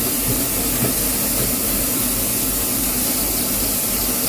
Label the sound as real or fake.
real